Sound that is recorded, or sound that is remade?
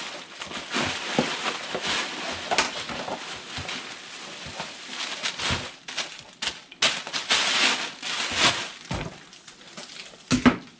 recorded